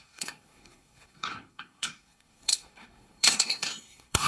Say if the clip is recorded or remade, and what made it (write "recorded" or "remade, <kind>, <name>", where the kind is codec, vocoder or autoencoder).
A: remade, codec, SNAC